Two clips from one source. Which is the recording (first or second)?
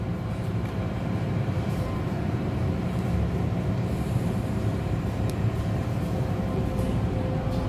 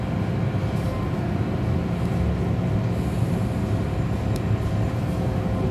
second